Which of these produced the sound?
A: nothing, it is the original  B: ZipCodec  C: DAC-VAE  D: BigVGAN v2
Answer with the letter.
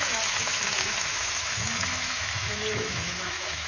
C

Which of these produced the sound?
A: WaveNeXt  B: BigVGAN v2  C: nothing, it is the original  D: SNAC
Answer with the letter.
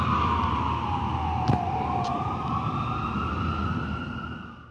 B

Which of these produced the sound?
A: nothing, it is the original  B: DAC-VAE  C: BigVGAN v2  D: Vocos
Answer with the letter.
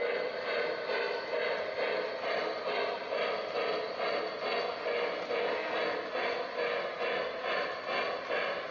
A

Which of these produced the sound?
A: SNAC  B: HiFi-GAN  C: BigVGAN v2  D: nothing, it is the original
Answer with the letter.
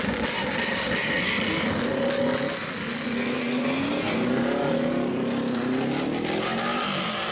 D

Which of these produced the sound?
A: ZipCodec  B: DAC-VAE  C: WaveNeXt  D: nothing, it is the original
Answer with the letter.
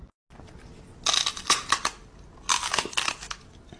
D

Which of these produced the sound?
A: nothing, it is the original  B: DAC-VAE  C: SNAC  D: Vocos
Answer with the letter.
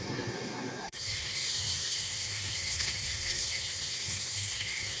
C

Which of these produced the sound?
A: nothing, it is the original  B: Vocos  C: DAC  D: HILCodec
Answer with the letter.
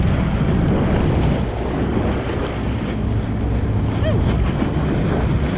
A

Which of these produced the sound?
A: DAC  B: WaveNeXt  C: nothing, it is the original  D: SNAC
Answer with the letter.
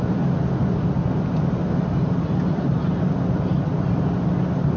C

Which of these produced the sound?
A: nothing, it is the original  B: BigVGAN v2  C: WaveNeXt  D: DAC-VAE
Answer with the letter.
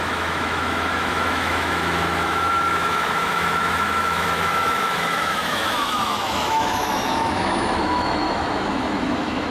D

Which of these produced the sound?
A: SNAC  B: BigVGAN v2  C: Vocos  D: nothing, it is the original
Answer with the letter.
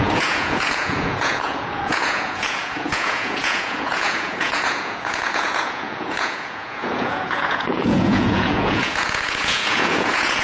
C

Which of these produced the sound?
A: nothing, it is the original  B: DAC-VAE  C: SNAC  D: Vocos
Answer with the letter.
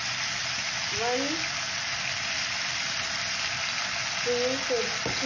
A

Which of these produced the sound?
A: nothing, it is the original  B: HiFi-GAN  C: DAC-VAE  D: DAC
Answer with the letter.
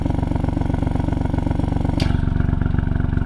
A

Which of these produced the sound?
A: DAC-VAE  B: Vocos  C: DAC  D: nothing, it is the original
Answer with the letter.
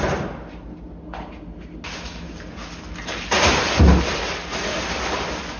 D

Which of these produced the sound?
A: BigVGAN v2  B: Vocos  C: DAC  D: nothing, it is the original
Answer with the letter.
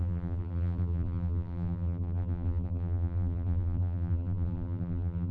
A